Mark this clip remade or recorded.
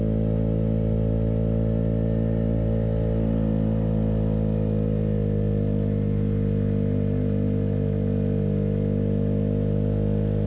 recorded